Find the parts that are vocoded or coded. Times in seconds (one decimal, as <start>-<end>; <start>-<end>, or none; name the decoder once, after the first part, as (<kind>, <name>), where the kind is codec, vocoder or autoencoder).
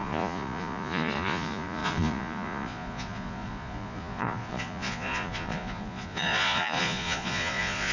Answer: 0.0-7.9 (vocoder, Vocos)